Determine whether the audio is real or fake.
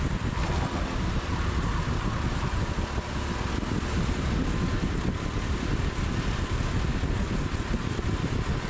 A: real